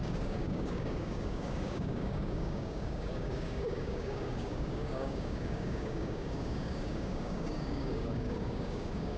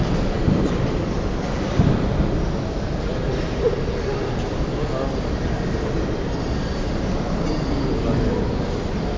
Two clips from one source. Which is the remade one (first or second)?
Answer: first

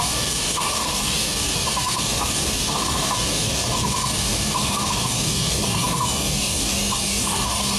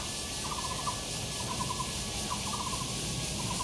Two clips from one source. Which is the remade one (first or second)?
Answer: first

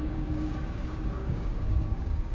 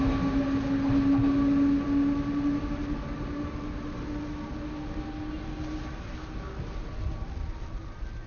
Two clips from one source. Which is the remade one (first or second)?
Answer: first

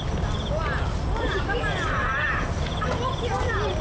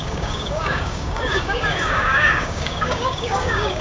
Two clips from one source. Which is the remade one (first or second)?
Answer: second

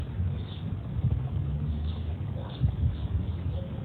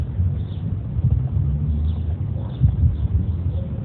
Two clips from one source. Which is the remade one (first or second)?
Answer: first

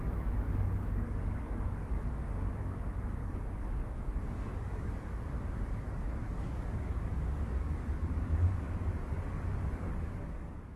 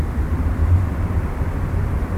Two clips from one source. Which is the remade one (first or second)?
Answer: first